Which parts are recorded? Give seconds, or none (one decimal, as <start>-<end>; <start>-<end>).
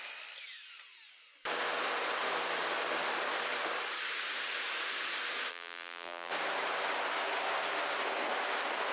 0.0-5.5; 6.3-8.9